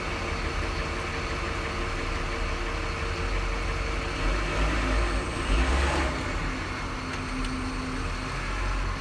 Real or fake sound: real